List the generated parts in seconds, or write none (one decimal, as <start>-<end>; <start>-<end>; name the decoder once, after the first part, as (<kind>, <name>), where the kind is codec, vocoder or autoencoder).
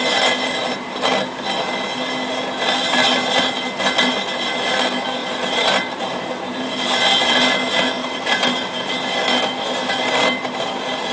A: 5.2-6.7 (vocoder, BigVGAN v2); 8.0-8.9